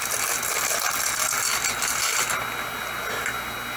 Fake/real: real